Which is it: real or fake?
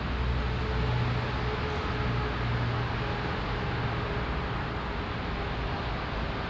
real